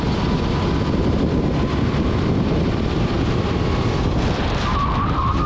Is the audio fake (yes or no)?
no